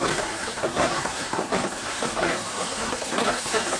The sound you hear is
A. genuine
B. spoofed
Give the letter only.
B